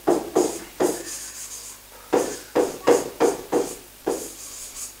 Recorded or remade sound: remade